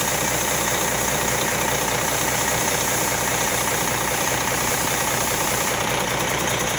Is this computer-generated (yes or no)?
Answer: yes